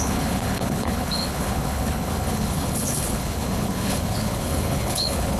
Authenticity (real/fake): fake